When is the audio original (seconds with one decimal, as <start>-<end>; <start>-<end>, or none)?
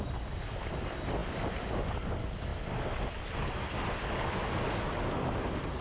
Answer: 0.0-5.8